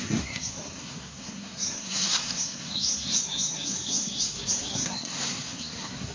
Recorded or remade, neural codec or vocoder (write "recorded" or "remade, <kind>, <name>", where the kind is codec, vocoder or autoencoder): remade, codec, SNAC